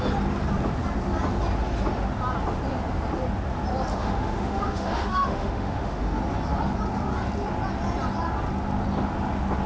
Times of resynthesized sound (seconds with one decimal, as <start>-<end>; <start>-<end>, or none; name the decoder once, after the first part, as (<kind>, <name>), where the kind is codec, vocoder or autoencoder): 3.9-6.2 (autoencoder, DAC-VAE)